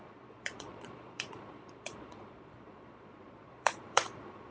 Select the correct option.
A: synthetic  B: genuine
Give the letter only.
A